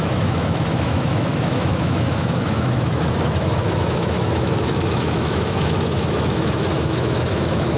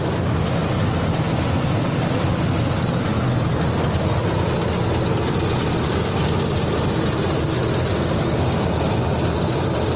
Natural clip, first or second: second